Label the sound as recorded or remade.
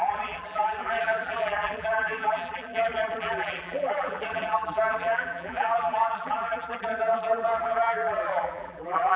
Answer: remade